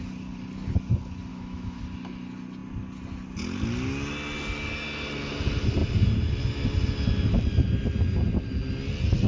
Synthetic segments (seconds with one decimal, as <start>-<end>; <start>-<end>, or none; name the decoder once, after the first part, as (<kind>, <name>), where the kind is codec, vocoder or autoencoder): 1.3-1.8 (autoencoder, DAC-VAE)